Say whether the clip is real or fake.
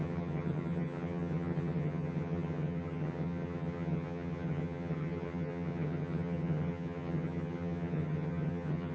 fake